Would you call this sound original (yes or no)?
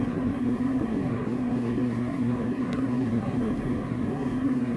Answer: no